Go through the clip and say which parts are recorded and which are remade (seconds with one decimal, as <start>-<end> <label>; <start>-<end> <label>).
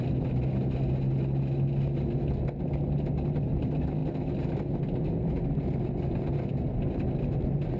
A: 0.0-7.8 recorded